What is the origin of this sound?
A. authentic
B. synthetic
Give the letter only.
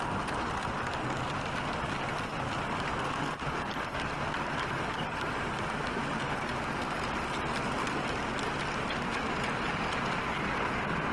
A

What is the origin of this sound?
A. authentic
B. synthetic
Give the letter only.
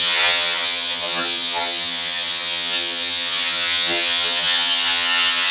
B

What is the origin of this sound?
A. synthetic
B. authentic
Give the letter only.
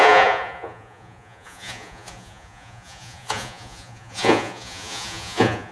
A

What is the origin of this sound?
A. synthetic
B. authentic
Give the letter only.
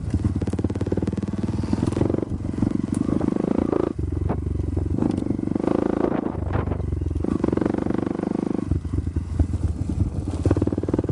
B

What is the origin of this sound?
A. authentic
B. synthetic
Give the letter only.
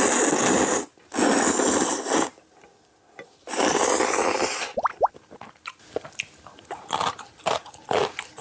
A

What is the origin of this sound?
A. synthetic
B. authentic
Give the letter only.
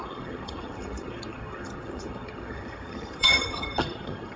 A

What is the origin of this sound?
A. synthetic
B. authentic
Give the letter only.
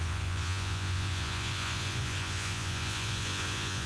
A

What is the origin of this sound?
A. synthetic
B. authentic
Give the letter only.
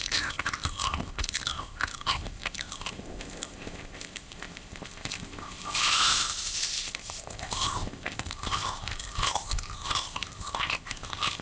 A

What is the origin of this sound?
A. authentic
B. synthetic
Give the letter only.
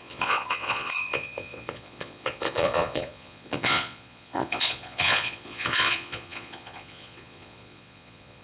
B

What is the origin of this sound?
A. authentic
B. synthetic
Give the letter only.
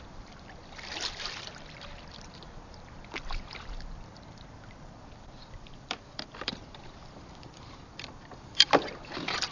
B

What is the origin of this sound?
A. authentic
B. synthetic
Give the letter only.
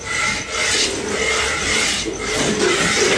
A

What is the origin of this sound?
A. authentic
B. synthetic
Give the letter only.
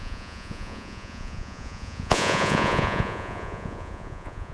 B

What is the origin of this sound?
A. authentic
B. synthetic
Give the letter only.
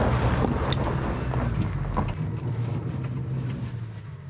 A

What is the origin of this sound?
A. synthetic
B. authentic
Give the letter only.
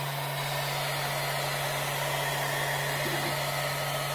B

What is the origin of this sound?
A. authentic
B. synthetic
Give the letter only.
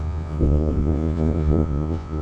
B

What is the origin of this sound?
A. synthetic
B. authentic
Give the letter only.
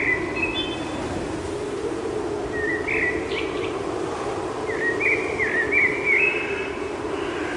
B